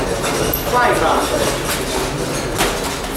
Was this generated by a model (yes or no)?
no